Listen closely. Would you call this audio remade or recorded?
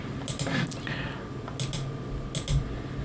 recorded